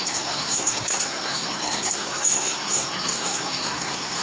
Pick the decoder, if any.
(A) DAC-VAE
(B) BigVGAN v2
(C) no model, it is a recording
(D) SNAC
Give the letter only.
D